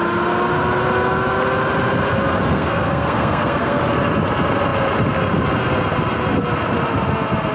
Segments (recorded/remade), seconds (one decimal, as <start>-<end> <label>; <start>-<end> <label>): 0.0-2.5 recorded; 2.5-3.8 remade; 3.8-7.5 recorded